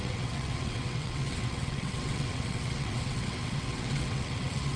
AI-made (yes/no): yes